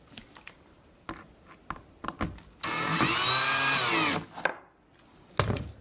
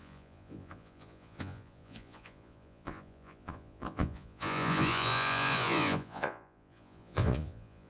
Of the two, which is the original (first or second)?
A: first